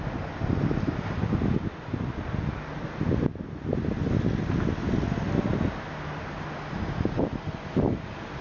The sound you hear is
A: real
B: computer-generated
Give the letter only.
A